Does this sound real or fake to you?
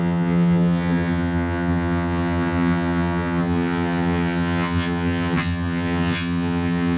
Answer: fake